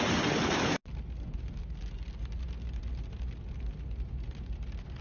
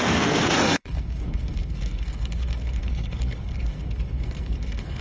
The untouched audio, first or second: first